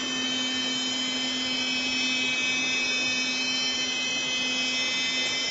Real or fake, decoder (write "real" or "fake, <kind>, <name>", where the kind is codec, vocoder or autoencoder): real